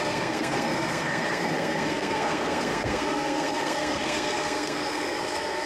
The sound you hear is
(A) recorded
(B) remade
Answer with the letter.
B